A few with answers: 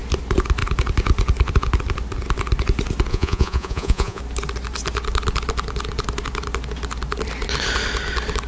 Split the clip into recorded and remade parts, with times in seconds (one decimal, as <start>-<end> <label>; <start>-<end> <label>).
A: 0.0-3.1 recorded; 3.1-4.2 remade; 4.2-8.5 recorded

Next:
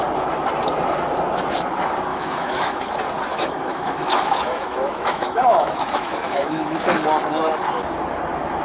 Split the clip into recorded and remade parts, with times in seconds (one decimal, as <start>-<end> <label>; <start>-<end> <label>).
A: 0.0-2.1 recorded; 2.1-2.8 remade; 2.8-3.3 recorded; 3.3-7.0 remade; 7.0-8.6 recorded

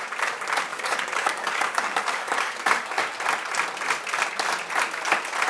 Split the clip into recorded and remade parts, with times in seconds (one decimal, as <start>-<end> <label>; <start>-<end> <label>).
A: 0.0-0.7 recorded; 0.7-3.0 remade; 3.0-5.5 recorded

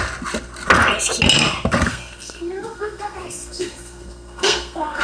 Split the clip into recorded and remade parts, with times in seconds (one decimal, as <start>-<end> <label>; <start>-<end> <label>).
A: 0.0-1.9 recorded; 1.9-5.0 remade

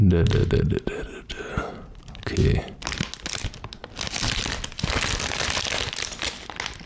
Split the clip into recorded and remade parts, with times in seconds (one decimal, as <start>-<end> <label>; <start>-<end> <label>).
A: 0.0-6.9 recorded

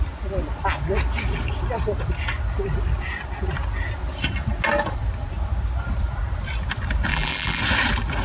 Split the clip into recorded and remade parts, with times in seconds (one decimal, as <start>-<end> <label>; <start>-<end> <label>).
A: 0.0-7.1 recorded; 7.1-7.6 remade; 7.6-8.2 recorded

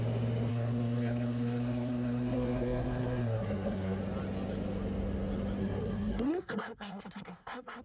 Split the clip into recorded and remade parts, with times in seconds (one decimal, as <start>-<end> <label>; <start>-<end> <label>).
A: 0.0-0.5 recorded; 0.5-4.0 remade; 4.0-5.6 recorded; 5.6-7.8 remade